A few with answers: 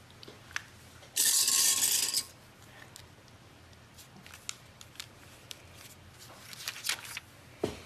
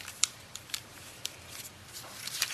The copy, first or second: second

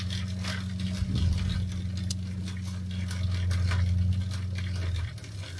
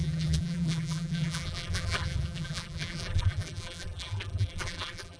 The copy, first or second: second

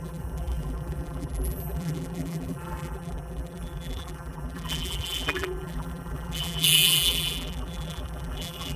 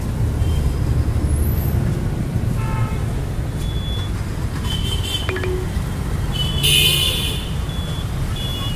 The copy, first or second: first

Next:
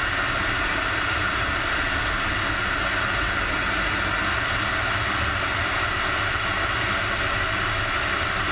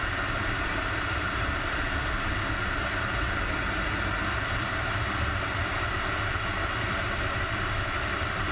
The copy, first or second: second